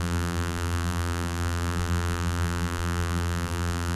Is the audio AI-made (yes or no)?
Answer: yes